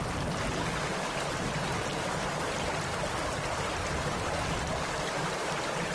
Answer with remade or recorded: recorded